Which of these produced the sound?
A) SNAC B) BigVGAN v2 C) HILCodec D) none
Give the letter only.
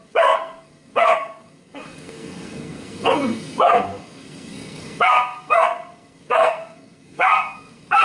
A